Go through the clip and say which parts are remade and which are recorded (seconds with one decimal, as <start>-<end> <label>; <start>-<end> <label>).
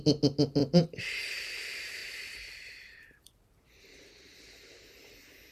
0.0-0.6 recorded; 0.6-1.5 remade; 1.5-2.0 recorded; 2.0-4.1 remade; 4.1-5.5 recorded